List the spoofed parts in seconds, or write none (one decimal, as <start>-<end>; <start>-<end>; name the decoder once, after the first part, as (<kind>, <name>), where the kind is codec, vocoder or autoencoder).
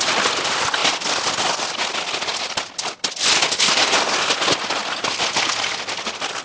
none